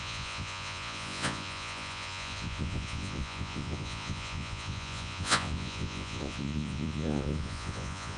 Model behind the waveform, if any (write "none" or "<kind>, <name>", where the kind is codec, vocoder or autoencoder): vocoder, Vocos